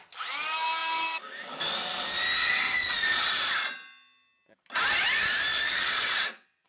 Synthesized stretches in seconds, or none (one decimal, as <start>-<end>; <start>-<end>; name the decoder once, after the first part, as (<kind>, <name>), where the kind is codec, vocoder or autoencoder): 2.4-3.3 (vocoder, WaveNeXt); 5.5-6.7